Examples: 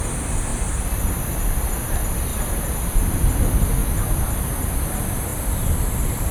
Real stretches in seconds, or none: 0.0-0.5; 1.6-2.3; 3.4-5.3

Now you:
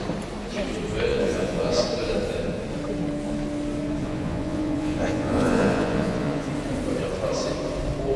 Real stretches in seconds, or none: 0.0-1.1; 1.8-4.0; 6.5-8.2

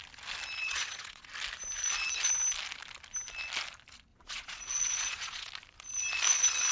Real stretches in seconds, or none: 0.0-0.6; 1.3-4.1; 5.5-6.7

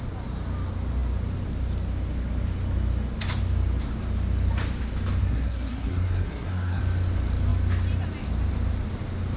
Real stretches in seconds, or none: 0.0-5.2; 6.8-9.4

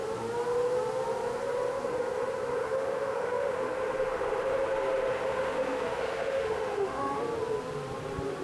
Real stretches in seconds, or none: 0.0-2.6; 3.6-5.2; 7.2-8.4

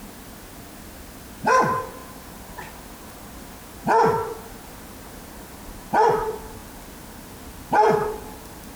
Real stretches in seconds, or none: 0.0-8.8

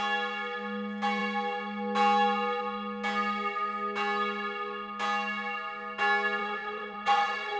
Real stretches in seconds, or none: 0.0-6.4